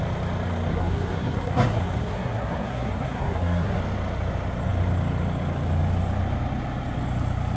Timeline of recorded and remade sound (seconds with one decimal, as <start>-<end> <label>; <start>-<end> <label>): 0.0-0.7 recorded; 0.7-3.8 remade; 3.8-7.6 recorded